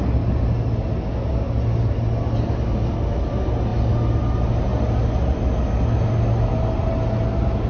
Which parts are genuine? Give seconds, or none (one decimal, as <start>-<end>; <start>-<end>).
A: 0.0-7.7